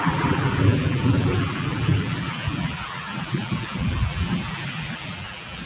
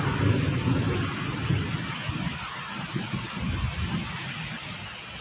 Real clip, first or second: second